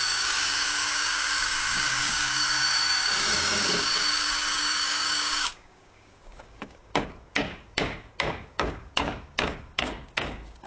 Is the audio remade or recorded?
remade